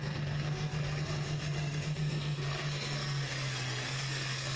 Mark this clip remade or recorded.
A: remade